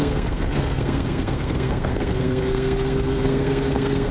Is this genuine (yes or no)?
no